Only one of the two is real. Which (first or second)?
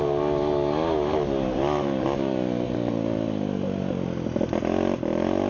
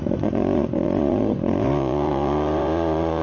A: first